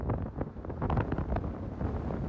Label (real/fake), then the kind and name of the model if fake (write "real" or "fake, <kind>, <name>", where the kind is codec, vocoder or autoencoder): real